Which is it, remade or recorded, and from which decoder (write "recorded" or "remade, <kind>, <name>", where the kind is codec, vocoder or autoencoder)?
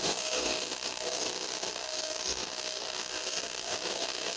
remade, codec, DAC